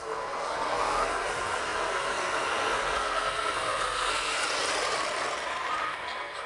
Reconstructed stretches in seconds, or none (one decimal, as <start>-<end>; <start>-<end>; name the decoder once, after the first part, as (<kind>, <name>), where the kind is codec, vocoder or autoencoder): 0.0-4.4 (codec, SNAC); 5.8-6.5